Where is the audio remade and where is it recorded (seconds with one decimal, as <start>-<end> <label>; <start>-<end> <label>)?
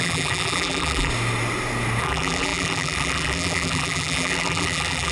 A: 0.0-1.1 remade; 1.1-2.0 recorded; 2.0-5.1 remade